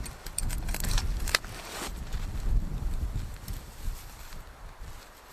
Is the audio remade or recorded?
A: remade